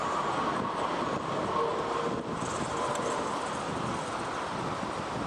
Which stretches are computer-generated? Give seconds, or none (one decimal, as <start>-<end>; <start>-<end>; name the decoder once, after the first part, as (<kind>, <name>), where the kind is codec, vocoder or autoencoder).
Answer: none